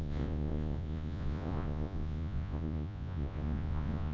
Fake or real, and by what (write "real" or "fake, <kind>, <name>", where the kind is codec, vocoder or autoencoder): fake, vocoder, Vocos